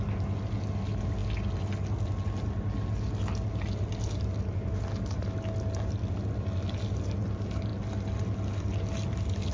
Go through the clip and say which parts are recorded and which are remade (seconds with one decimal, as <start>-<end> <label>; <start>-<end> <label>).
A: 0.0-9.5 recorded